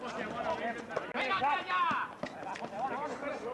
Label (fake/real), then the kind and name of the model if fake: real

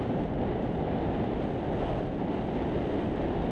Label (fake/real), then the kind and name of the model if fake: real